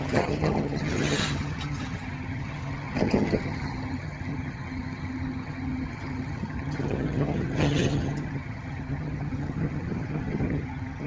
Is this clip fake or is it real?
fake